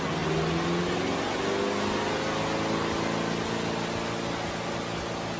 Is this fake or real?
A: real